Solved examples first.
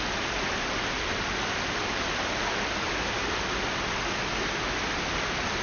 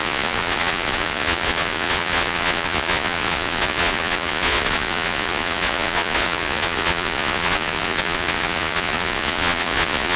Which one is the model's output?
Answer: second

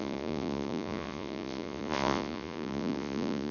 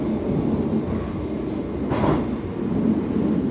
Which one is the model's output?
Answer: first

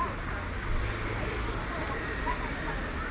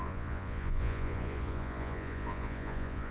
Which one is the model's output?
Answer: second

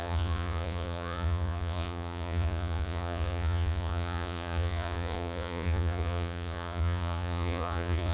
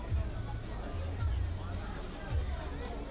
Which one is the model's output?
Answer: first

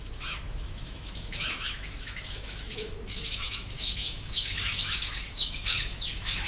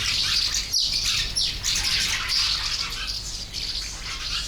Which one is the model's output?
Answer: first